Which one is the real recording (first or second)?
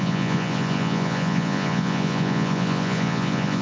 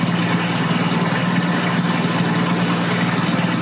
second